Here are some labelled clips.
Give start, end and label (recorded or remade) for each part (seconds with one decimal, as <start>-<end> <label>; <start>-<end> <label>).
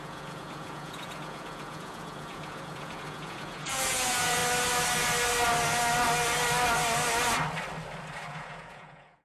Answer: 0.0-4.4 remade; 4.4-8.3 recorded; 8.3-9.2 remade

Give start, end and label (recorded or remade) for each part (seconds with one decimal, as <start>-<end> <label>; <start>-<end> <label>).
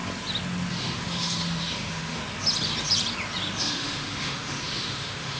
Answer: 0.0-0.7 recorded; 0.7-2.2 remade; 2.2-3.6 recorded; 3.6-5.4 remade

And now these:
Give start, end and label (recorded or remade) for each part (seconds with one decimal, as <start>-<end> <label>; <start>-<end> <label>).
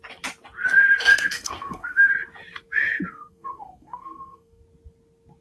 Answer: 0.0-1.1 recorded; 1.1-2.1 remade; 2.1-3.1 recorded; 3.1-4.6 remade; 4.6-5.4 recorded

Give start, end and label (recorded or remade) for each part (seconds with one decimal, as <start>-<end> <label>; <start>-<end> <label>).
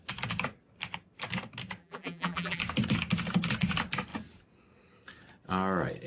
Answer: 0.0-1.8 recorded; 1.8-2.6 remade; 2.6-6.1 recorded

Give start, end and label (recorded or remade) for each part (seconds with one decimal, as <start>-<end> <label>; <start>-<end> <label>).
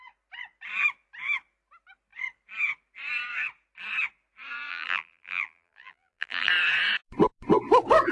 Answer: 0.0-4.7 recorded; 4.7-6.5 remade; 6.5-8.1 recorded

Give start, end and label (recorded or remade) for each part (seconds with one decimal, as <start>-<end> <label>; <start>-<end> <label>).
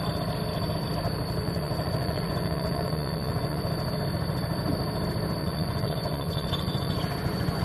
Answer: 0.0-1.4 recorded; 1.4-3.6 remade; 3.6-5.4 recorded; 5.4-7.6 remade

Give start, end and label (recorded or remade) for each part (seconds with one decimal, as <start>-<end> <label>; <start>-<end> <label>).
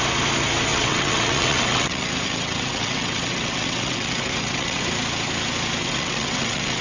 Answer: 0.0-0.7 recorded; 0.7-4.8 remade; 4.8-5.8 recorded; 5.8-6.8 remade